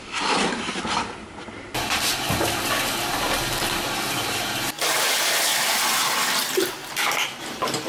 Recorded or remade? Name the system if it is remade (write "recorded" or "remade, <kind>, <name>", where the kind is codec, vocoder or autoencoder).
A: remade, vocoder, BigVGAN v2